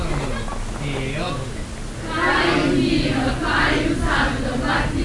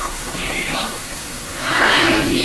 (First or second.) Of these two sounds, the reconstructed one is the second